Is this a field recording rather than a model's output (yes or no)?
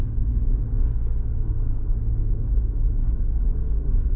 no